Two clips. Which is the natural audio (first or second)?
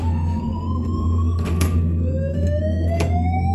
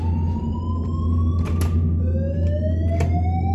second